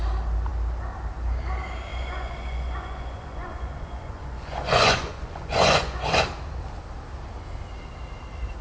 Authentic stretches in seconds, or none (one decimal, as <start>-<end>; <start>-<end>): 0.0-1.9; 6.2-8.6

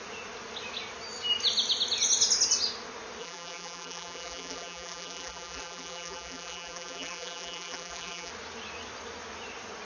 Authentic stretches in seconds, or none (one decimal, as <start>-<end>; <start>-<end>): 0.0-3.2; 8.3-9.8

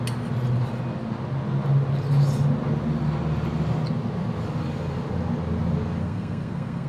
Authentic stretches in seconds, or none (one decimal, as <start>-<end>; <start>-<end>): 0.0-6.0

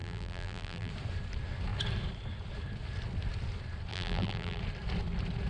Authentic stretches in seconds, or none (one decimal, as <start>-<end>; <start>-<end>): 0.9-3.9; 4.6-5.5

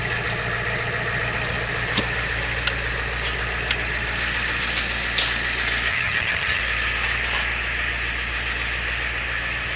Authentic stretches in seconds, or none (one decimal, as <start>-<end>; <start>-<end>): 0.0-5.9; 6.6-9.8

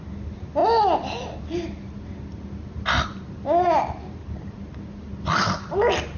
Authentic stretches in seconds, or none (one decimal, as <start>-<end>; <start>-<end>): 0.0-6.2